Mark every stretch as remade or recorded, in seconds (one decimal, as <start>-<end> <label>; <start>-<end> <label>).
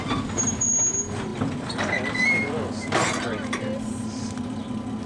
0.0-5.1 recorded